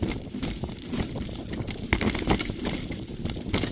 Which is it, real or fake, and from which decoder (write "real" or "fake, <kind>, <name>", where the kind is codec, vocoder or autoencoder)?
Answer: fake, vocoder, BigVGAN v2